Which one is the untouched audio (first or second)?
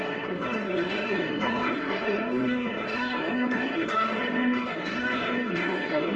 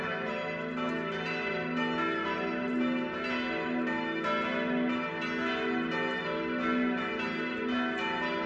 second